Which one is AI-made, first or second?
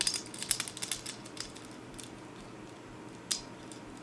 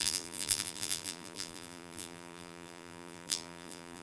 second